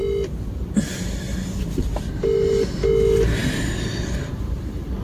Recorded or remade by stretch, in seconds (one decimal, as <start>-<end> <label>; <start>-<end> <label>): 0.0-1.3 recorded; 1.3-2.1 remade; 2.1-5.0 recorded